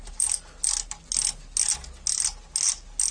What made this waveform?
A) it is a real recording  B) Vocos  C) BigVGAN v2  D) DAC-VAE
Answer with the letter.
A